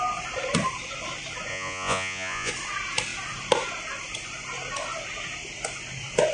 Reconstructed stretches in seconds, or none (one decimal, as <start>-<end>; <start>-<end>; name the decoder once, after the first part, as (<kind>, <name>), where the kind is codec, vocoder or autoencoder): 1.5-2.5 (vocoder, Vocos)